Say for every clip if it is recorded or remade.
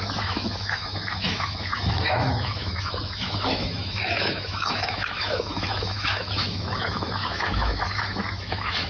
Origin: remade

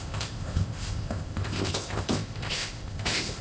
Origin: remade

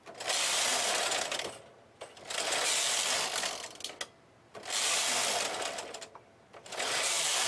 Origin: recorded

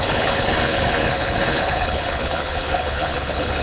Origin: remade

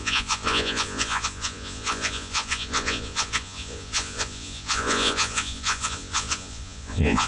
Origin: remade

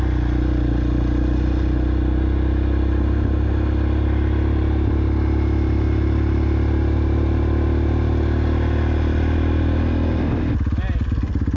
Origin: recorded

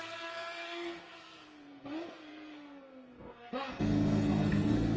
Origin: remade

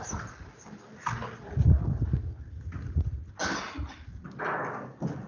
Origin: recorded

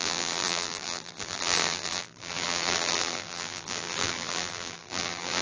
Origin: remade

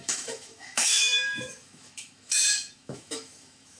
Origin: remade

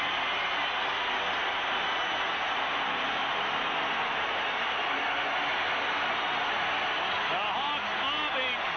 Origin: recorded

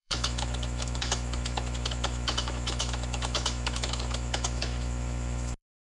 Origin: remade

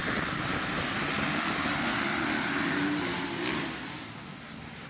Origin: recorded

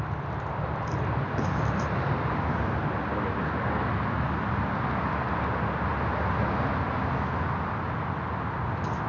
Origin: recorded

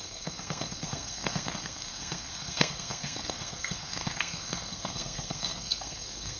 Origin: remade